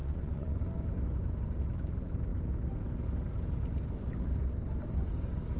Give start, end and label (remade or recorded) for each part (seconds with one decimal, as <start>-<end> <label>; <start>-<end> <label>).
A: 0.0-0.6 remade; 0.6-5.6 recorded